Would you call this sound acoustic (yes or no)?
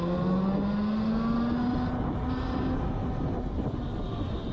yes